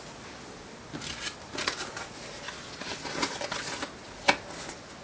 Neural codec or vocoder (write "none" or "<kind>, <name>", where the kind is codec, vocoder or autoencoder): none